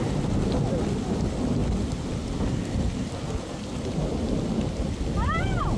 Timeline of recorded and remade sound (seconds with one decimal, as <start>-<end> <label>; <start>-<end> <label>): 0.0-5.8 recorded